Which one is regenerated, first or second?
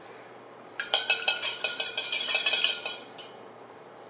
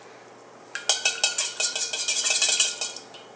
first